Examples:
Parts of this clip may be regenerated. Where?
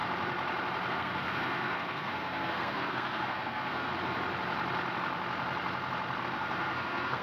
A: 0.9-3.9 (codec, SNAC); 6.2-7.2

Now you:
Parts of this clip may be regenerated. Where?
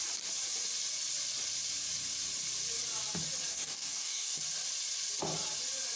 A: 3.5-4.4 (codec, DAC)